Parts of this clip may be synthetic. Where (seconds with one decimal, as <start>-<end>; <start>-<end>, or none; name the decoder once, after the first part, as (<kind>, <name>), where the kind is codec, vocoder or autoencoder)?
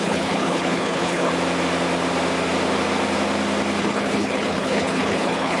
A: 0.0-1.3 (codec, HILCodec); 3.8-5.6